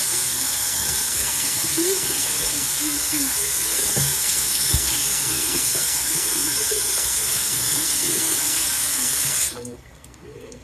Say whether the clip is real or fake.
fake